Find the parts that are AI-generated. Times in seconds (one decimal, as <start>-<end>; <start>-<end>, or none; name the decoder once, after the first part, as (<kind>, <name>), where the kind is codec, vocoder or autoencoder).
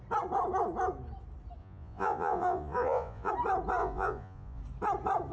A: 1.6-3.3 (vocoder, Vocos); 3.8-4.6